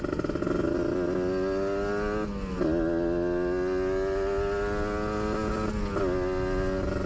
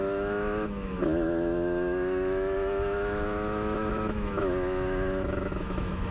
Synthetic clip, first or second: second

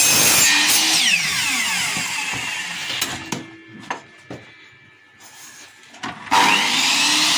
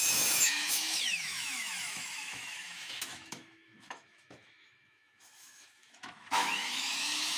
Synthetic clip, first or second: second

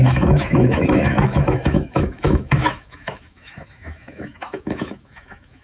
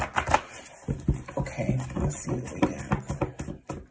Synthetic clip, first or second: first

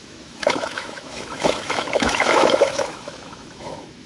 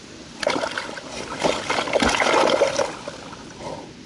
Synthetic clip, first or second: first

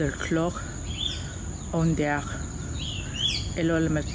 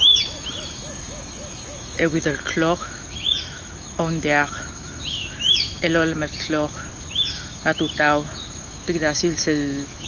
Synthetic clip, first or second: second